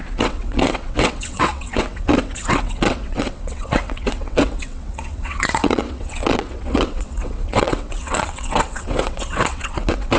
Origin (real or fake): fake